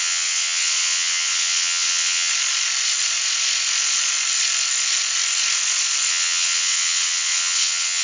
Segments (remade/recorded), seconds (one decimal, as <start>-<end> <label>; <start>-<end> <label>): 0.0-2.3 remade; 2.3-6.1 recorded; 6.1-8.0 remade